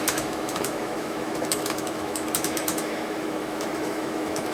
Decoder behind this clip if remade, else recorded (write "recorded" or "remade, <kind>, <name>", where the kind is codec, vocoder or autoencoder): remade, autoencoder, DAC-VAE